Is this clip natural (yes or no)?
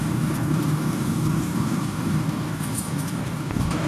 no